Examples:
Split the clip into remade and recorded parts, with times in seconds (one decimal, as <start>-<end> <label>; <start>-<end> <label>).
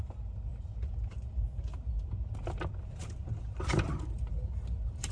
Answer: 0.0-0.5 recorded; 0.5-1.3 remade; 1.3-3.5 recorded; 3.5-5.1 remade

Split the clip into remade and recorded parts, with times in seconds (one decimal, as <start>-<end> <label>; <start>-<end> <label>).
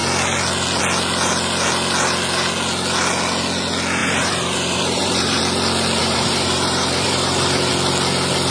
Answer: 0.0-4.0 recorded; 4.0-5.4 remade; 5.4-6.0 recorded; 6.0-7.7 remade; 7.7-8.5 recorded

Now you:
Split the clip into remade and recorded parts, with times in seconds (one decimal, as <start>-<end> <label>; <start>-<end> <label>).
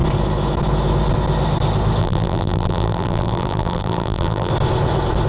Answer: 0.0-2.0 recorded; 2.0-4.5 remade; 4.5-5.3 recorded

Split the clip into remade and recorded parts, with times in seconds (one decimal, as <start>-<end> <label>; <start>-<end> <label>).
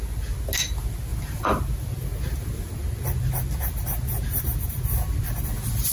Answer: 0.0-1.1 recorded; 1.1-1.6 remade; 1.6-5.9 recorded